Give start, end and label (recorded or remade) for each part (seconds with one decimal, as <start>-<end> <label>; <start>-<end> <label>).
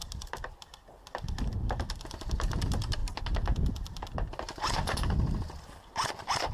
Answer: 0.0-6.5 recorded